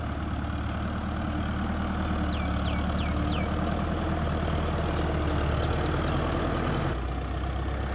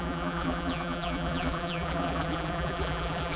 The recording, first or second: first